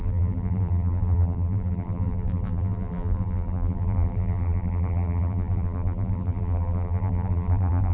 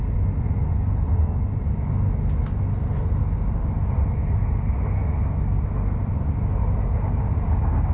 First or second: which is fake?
first